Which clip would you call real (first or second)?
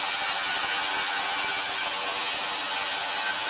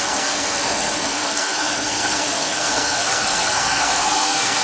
first